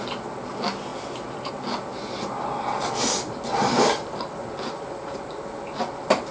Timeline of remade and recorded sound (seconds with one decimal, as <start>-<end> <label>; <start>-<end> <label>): 0.0-6.3 recorded